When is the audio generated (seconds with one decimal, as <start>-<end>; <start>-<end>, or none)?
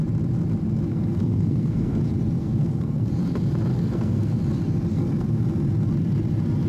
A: 0.9-2.0; 2.4-3.1; 3.7-4.4; 4.9-5.4